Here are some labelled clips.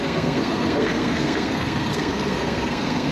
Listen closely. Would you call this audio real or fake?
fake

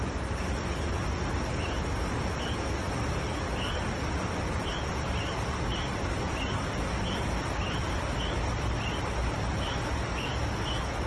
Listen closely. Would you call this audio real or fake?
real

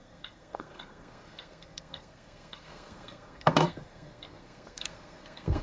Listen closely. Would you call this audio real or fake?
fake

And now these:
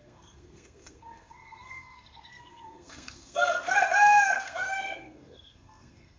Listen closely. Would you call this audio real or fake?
fake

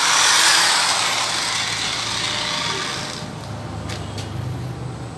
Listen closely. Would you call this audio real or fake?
real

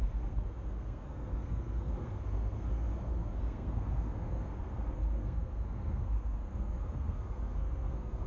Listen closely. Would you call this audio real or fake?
fake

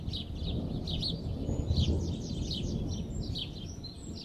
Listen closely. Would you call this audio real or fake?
real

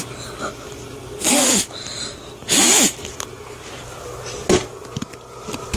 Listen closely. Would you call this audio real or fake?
real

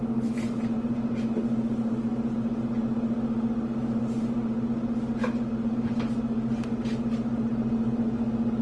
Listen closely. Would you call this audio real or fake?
real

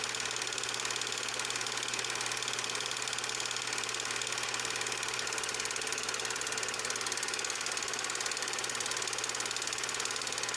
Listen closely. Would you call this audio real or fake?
real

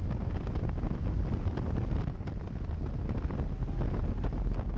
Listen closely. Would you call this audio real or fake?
real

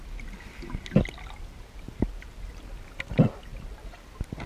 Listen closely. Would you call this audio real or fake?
real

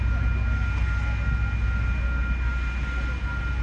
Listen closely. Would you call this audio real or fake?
real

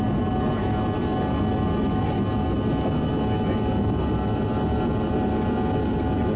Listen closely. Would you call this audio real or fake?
real